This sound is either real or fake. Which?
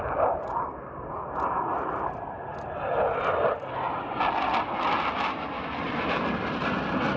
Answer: real